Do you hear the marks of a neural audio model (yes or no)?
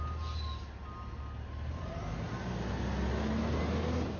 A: no